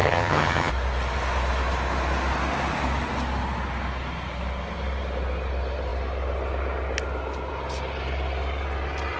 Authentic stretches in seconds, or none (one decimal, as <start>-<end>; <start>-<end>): 0.7-9.2

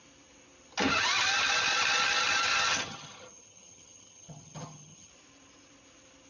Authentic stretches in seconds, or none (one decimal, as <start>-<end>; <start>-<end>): 0.0-2.5; 5.1-6.3

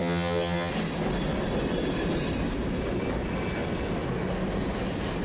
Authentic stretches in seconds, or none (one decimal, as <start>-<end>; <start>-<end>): 0.7-5.2

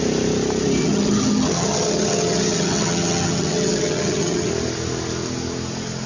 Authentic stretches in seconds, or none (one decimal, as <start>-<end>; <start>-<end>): 0.0-0.8; 4.5-6.1

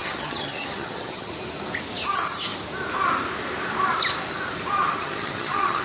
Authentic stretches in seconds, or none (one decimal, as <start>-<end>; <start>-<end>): 1.3-5.0

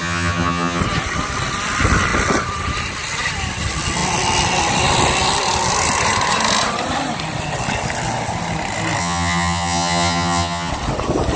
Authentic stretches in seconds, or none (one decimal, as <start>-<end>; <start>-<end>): 0.8-9.0; 10.7-11.4

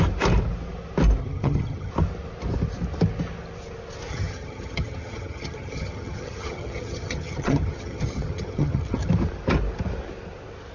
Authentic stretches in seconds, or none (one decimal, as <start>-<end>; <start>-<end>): 0.0-1.2; 1.9-4.1; 9.1-10.7